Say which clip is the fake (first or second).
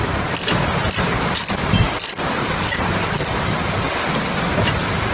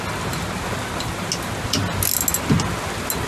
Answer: first